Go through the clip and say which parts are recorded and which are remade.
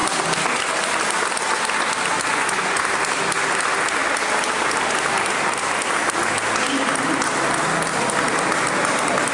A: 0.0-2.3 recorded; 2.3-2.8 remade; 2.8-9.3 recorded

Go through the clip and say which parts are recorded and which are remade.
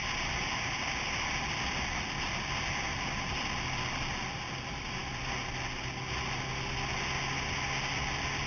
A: 0.0-8.5 recorded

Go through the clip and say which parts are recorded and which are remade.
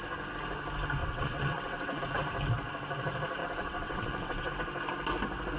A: 0.0-1.0 recorded; 1.0-2.0 remade; 2.0-3.4 recorded; 3.4-4.5 remade; 4.5-5.6 recorded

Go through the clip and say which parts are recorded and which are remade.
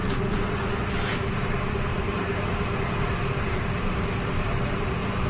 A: 0.0-1.9 recorded; 1.9-5.3 remade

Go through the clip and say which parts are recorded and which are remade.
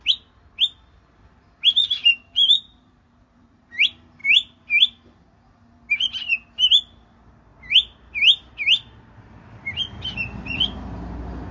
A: 0.0-2.0 recorded; 2.0-3.7 remade; 3.7-11.5 recorded